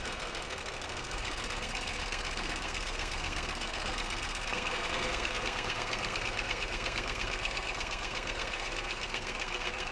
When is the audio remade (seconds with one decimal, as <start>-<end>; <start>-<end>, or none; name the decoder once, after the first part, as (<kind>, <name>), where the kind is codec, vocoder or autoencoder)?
0.0-9.9 (codec, SNAC)